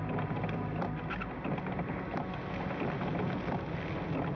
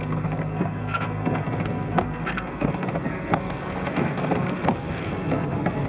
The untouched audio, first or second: first